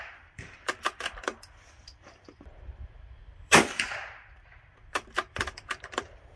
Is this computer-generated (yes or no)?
yes